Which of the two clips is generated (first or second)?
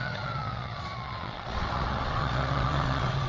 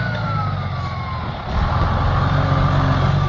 first